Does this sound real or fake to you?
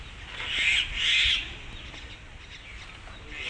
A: real